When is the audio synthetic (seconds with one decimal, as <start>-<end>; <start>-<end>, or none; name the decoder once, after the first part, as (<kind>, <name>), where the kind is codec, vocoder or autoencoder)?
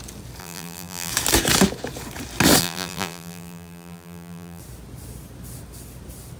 0.4-1.1 (vocoder, BigVGAN v2); 2.6-4.6